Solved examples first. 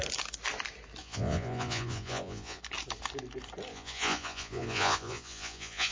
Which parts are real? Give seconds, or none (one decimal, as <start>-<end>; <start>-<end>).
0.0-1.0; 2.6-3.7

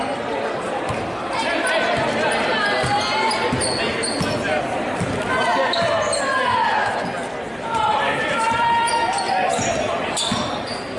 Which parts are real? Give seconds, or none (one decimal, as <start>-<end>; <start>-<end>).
0.0-7.9; 8.9-11.0

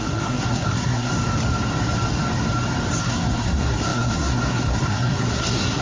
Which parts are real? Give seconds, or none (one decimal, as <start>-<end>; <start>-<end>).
1.1-3.0